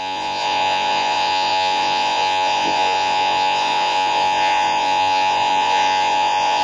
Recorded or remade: remade